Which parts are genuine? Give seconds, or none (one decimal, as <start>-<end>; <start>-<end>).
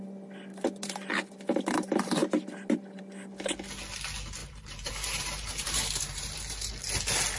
0.0-0.5; 1.1-4.4; 6.7-7.4